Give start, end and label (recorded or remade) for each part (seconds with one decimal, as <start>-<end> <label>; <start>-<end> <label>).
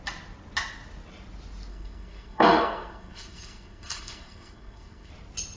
0.0-1.7 recorded; 1.7-5.1 remade; 5.1-5.6 recorded